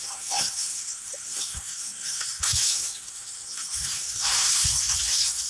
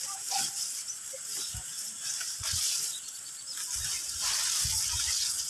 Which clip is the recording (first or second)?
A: second